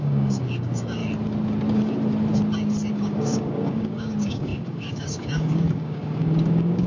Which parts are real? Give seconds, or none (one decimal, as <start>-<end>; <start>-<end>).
1.0-2.9